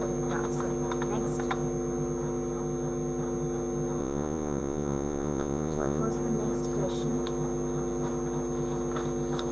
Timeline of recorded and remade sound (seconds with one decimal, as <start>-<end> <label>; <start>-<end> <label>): 0.0-4.0 recorded; 4.0-6.0 remade; 6.0-9.5 recorded